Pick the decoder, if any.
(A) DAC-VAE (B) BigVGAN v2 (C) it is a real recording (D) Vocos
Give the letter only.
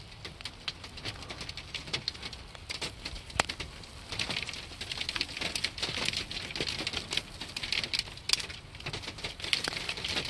C